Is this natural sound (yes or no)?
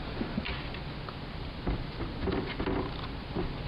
yes